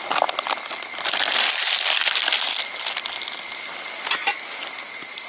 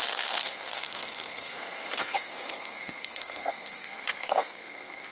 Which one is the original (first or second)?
first